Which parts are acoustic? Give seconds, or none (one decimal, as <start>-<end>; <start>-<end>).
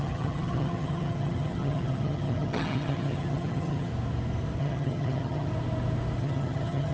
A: 3.9-4.6; 5.5-6.2